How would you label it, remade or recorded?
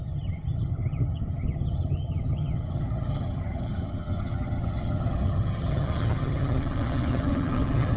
remade